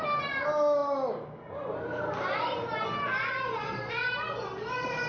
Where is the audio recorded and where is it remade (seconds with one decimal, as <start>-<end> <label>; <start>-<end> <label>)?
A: 0.0-5.1 recorded